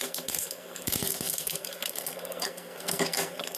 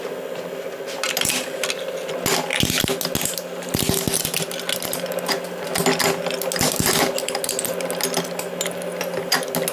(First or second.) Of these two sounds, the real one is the second